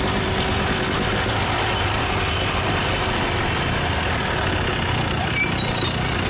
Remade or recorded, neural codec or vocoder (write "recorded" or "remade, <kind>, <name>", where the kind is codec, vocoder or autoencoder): recorded